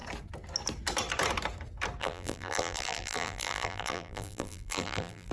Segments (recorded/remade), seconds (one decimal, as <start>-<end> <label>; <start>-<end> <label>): 0.0-2.0 recorded; 2.0-5.3 remade